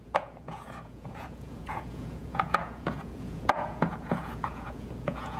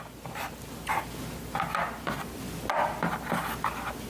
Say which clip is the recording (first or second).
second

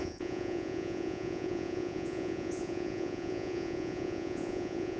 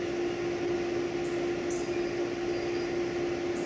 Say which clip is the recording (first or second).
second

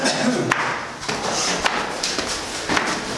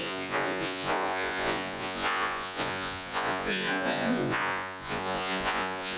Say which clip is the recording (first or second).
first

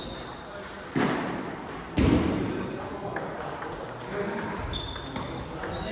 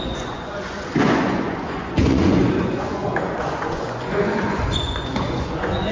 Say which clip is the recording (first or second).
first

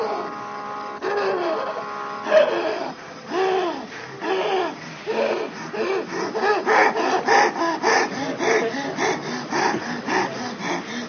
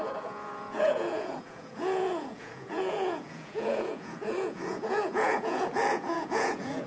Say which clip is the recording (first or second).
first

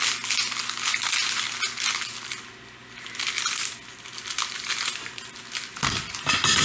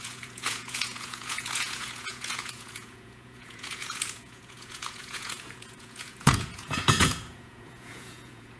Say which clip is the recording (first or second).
first